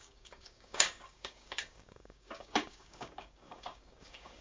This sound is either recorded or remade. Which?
remade